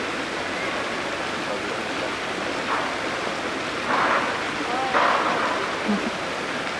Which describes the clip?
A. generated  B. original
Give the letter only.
B